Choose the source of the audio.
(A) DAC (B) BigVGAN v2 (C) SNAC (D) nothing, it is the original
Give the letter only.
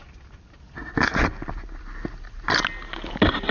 D